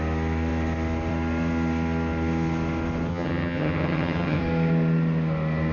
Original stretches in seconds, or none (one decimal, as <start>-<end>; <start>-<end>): 0.0-3.1; 4.4-5.7